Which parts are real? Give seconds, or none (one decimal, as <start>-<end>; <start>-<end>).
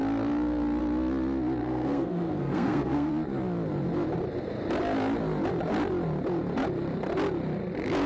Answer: 0.0-1.6; 3.1-8.1